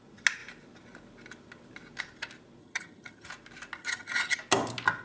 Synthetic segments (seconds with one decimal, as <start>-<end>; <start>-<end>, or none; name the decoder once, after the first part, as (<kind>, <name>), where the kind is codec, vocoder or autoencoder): 2.6-3.3 (vocoder, HiFi-GAN); 3.8-4.4